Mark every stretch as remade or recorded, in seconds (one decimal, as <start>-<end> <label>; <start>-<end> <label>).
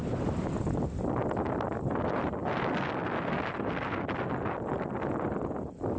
0.0-6.0 recorded